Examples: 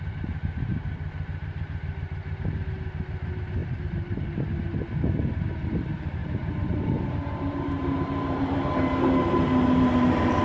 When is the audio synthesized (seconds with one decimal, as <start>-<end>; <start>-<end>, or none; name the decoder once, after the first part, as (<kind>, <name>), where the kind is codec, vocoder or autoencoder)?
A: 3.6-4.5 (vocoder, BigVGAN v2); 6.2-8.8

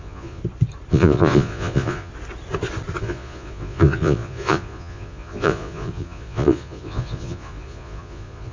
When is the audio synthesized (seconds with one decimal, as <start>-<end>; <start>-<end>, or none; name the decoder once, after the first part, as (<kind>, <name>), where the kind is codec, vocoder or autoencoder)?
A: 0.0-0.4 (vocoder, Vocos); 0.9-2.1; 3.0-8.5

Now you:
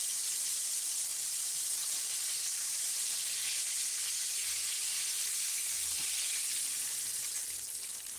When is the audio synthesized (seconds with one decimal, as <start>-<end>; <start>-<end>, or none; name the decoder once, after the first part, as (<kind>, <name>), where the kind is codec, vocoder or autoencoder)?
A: 0.0-3.2 (vocoder, BigVGAN v2)

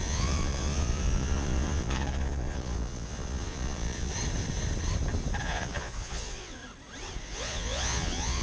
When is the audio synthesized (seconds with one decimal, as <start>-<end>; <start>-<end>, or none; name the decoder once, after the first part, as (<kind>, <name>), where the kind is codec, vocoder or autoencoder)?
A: 0.0-4.1 (vocoder, Vocos); 5.4-6.6; 7.2-8.4